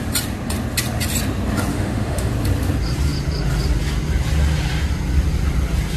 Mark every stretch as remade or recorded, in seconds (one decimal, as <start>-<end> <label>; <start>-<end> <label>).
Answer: 0.0-1.7 recorded; 1.7-2.3 remade; 2.3-6.0 recorded